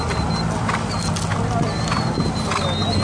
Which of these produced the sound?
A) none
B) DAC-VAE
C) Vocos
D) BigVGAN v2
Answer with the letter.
A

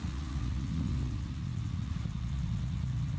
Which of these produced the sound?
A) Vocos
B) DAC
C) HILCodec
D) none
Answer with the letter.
A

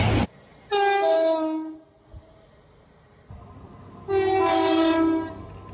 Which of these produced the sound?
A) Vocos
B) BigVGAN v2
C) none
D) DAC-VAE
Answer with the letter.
C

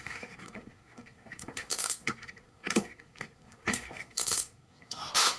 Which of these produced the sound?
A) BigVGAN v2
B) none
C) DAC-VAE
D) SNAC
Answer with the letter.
D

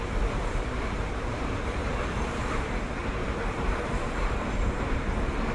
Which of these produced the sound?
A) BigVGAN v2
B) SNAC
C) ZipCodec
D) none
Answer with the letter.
A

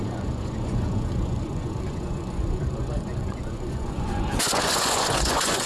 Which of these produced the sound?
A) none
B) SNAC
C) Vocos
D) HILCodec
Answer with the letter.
C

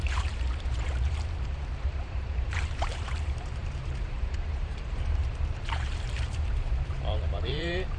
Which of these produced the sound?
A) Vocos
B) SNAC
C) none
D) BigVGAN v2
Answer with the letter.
D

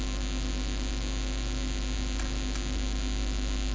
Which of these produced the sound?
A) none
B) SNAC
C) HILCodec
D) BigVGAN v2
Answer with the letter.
A